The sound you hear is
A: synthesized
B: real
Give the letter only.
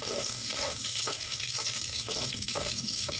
A